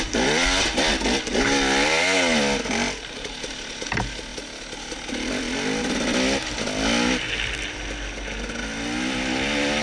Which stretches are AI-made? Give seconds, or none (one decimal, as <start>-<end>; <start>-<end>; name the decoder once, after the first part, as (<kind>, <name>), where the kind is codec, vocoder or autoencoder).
none